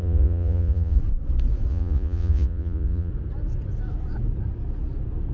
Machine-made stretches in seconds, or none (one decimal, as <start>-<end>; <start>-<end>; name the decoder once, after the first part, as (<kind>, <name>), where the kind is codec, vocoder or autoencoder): 0.0-1.0 (vocoder, Vocos); 1.7-3.1